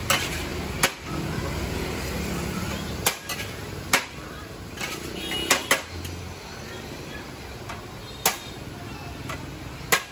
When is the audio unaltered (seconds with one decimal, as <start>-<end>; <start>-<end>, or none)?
0.0-10.1